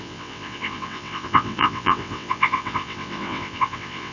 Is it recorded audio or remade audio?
remade